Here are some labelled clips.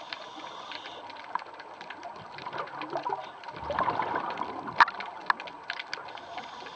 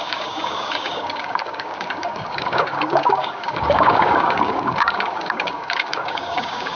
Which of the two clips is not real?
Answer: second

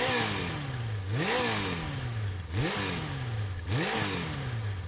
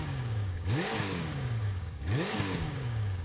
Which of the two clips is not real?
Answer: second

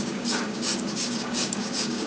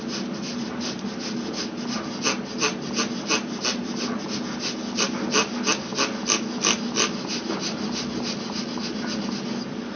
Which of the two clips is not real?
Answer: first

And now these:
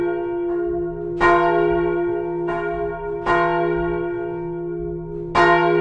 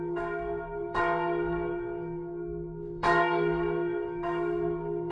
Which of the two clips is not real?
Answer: second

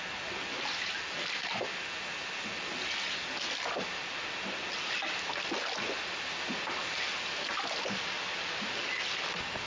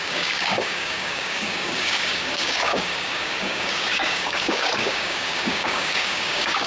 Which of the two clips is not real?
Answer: second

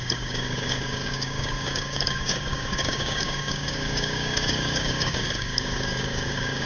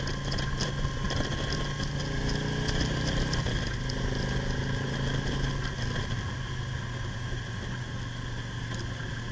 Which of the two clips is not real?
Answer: first